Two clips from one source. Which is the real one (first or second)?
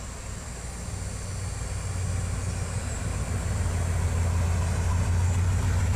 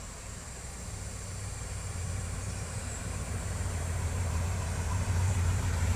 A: first